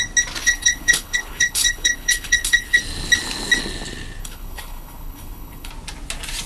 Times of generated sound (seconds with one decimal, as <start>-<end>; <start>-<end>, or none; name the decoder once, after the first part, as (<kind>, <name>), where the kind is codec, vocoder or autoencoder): 0.4-2.8 (codec, HILCodec); 4.2-5.7